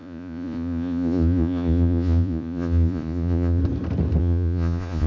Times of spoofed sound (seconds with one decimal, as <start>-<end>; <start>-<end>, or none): 0.0-3.6; 4.2-5.1